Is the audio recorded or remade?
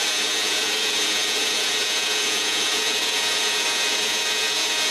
remade